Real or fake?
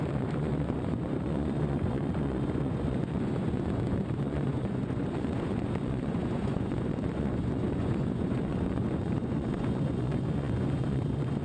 fake